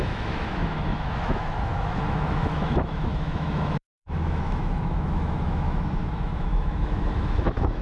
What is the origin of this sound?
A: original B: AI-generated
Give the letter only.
B